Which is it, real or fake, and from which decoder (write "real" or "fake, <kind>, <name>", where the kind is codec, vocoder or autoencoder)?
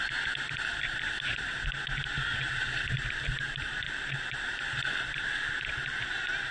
real